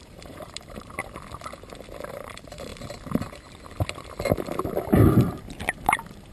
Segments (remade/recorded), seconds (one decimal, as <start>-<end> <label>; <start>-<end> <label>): 0.0-1.0 remade; 1.0-2.1 recorded; 2.1-2.7 remade; 2.7-5.4 recorded; 5.4-6.3 remade